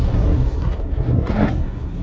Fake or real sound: fake